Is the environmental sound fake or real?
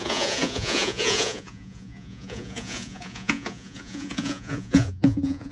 fake